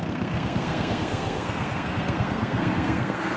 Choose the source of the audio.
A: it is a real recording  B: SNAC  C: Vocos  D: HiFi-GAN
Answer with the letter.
B